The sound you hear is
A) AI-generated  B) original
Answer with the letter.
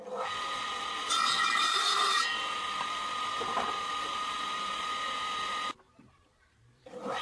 A